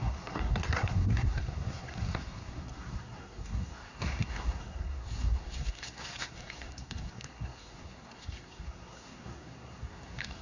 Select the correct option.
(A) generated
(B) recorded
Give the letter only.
A